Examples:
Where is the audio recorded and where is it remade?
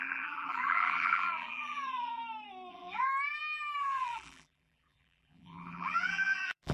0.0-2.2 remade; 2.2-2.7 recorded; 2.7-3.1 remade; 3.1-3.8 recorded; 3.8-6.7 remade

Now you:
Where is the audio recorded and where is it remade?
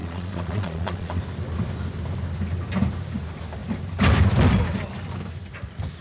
0.0-1.2 remade; 1.2-6.0 recorded